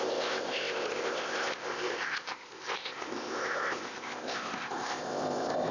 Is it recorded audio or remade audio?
remade